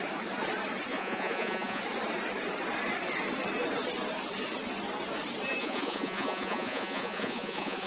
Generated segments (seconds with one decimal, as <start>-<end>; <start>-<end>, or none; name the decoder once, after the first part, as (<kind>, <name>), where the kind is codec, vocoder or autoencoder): 0.9-1.8 (vocoder, Vocos); 5.6-7.9